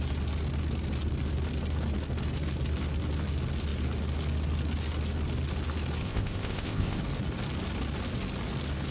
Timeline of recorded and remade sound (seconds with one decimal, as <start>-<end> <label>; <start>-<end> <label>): 0.0-6.0 recorded; 6.0-7.0 remade; 7.0-8.9 recorded